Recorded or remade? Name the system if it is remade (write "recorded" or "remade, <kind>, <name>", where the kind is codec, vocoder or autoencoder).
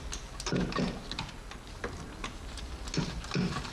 recorded